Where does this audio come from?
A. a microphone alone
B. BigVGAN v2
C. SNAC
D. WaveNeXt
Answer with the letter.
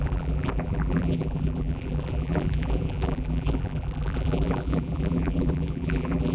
B